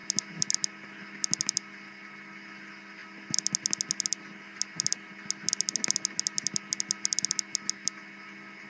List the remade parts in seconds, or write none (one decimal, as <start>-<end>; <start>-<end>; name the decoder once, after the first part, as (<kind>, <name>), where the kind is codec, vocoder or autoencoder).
none